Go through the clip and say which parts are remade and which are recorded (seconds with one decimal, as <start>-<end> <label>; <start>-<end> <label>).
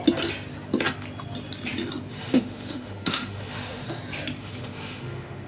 0.0-2.1 recorded; 2.1-4.0 remade; 4.0-4.4 recorded; 4.4-5.5 remade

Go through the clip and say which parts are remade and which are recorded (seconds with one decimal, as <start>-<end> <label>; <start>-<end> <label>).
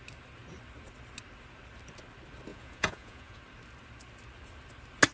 0.0-2.5 recorded; 2.5-3.4 remade; 3.4-5.1 recorded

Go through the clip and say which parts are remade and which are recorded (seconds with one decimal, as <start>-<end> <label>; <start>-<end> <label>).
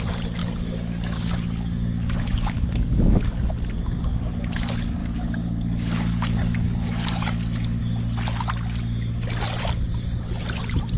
0.0-0.4 recorded; 0.4-3.5 remade; 3.5-5.0 recorded; 5.0-7.8 remade; 7.8-11.0 recorded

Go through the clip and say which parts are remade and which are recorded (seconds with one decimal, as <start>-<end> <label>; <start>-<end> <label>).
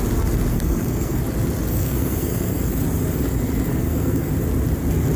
0.0-0.5 recorded; 0.5-1.2 remade; 1.2-1.7 recorded; 1.7-2.7 remade; 2.7-3.7 recorded; 3.7-4.3 remade; 4.3-5.2 recorded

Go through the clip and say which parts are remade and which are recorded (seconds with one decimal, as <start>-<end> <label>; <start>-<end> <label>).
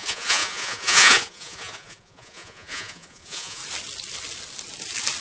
0.0-3.6 remade; 3.6-5.2 recorded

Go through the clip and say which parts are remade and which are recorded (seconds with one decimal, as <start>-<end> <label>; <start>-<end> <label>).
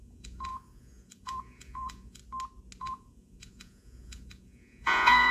0.0-2.2 remade; 2.2-2.8 recorded; 2.8-5.3 remade